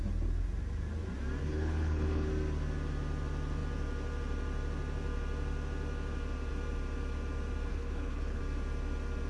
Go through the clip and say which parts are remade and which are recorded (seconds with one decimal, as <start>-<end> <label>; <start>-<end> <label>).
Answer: 0.0-1.4 recorded; 1.4-2.3 remade; 2.3-7.7 recorded; 7.7-8.4 remade; 8.4-9.3 recorded